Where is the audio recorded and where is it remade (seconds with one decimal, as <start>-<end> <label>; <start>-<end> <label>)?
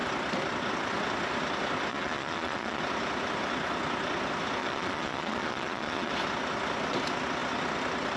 0.0-1.9 recorded; 1.9-2.8 remade; 2.8-4.6 recorded; 4.6-6.1 remade; 6.1-8.2 recorded